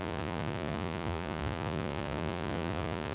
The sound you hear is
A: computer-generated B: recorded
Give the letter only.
A